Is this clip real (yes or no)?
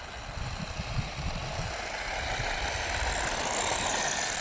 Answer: yes